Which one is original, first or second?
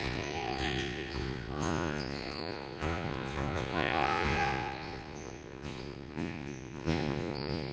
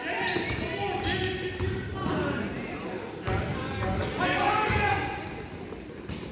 second